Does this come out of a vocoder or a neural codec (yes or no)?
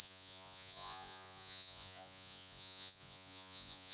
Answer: yes